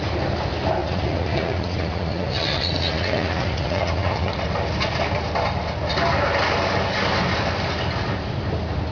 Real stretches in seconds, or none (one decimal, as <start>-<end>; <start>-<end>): 0.0-0.8; 4.3-8.9